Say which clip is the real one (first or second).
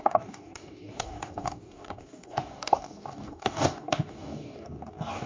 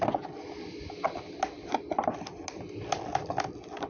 second